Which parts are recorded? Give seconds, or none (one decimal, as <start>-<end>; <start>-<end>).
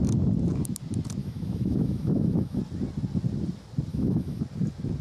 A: 0.0-1.2; 2.6-3.9; 4.4-5.0